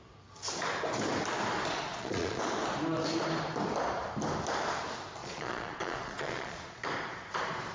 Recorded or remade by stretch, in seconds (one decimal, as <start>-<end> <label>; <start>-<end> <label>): 0.0-1.9 recorded; 1.9-2.4 remade; 2.4-5.2 recorded; 5.2-6.9 remade; 6.9-7.7 recorded